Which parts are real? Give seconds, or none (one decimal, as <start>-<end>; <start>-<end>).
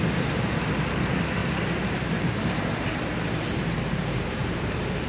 0.0-1.4; 3.4-4.4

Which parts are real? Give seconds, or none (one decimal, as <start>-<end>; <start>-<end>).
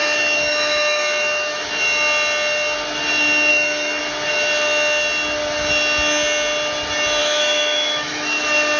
1.7-3.5; 4.0-7.2; 8.4-8.8